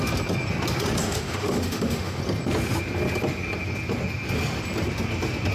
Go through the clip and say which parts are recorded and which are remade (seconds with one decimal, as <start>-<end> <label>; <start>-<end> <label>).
0.0-1.0 recorded; 1.0-2.2 remade; 2.2-5.5 recorded